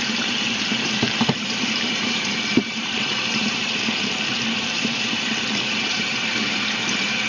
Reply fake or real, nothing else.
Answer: fake